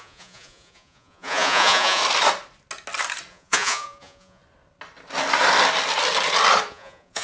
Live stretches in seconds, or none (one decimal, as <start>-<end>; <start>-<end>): 2.0-3.3; 4.4-6.7